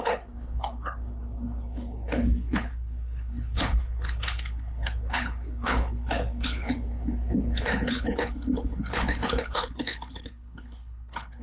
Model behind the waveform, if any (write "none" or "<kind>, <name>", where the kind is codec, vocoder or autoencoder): codec, HILCodec